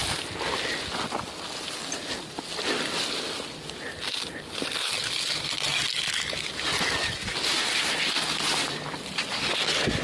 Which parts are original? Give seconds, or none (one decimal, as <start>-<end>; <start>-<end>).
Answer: 0.0-10.0